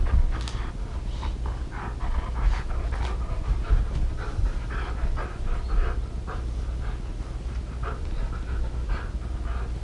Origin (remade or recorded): recorded